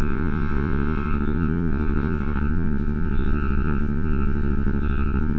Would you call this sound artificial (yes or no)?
yes